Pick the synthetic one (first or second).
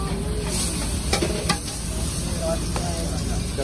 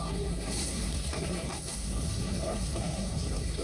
second